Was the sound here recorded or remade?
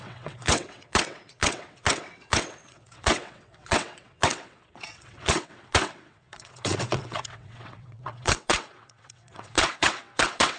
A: remade